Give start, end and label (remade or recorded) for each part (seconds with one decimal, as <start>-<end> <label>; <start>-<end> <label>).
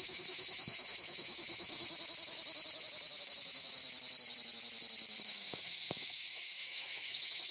0.0-1.8 remade; 1.8-3.2 recorded; 3.2-3.8 remade; 3.8-5.2 recorded; 5.2-7.5 remade